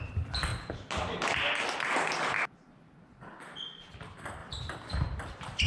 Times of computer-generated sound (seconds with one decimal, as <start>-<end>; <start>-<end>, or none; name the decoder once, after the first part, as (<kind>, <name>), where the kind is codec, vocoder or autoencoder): 4.4-5.7 (vocoder, BigVGAN v2)